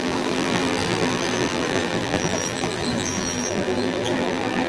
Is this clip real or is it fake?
fake